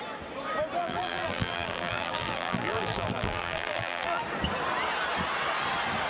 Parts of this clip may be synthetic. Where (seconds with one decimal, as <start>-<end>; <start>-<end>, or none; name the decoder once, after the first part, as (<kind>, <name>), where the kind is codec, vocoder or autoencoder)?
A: 0.8-4.2 (vocoder, BigVGAN v2)